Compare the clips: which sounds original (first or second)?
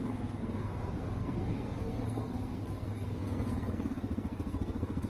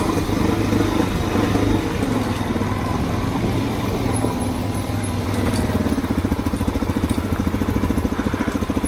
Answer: second